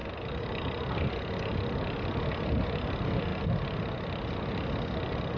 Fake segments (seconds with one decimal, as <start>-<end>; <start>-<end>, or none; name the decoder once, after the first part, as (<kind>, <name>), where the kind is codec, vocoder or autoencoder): none